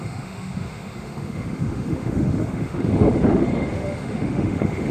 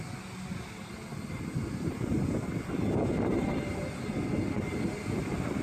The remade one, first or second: first